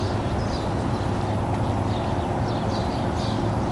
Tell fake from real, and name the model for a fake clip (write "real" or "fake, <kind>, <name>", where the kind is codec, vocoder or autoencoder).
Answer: real